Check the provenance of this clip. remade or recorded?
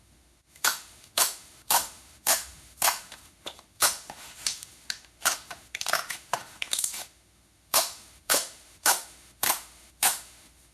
remade